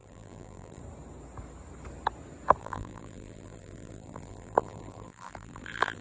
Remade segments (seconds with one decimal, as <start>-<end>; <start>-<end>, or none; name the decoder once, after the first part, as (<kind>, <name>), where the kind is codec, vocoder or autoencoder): 0.0-0.8 (vocoder, BigVGAN v2); 2.6-6.0